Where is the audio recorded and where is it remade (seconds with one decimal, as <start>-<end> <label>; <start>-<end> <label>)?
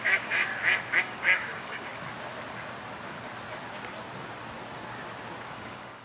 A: 0.0-0.5 remade; 0.5-1.0 recorded; 1.0-1.9 remade; 1.9-5.5 recorded; 5.5-6.0 remade